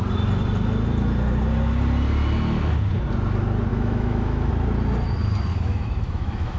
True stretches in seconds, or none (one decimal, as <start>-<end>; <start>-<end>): 0.0-3.7; 4.5-5.5